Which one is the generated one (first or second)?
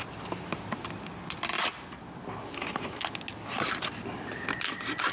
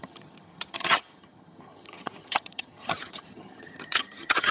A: second